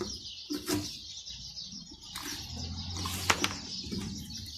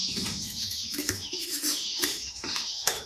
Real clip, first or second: first